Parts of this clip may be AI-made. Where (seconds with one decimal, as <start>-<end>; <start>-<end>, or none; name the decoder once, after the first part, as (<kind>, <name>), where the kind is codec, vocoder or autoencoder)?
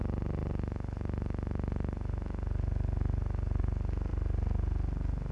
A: none